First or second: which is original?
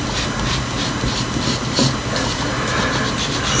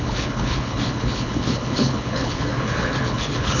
first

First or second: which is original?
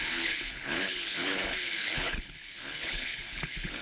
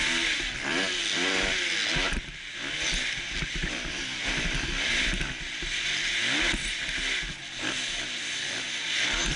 second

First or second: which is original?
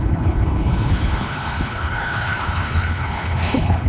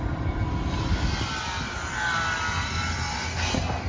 second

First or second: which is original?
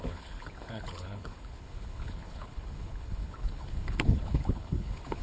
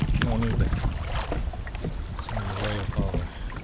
second